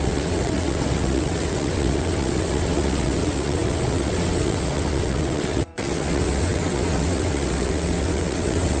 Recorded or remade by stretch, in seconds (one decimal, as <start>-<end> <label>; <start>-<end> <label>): 0.0-8.8 remade